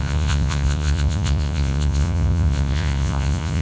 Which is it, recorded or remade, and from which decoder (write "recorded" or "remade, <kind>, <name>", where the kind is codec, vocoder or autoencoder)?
remade, vocoder, Vocos